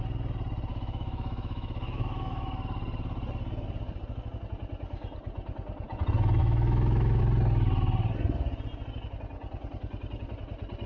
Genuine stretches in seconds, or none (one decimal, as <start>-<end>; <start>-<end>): 0.0-0.7; 2.5-6.4; 7.2-10.9